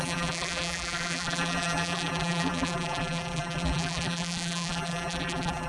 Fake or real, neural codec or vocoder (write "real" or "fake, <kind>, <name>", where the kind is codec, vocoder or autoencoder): fake, vocoder, BigVGAN v2